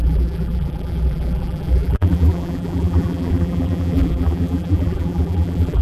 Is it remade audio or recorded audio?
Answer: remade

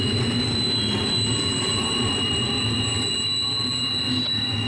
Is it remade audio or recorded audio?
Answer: recorded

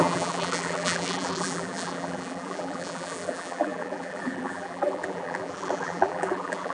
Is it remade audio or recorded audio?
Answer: remade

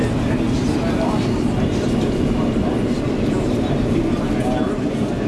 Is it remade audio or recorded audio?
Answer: recorded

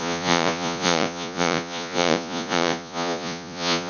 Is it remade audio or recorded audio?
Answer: remade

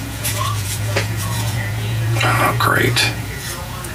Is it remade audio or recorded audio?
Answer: remade